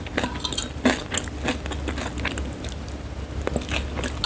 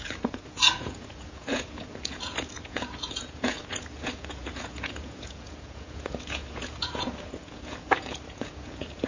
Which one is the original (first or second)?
first